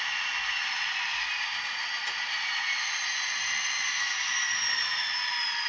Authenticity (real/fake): real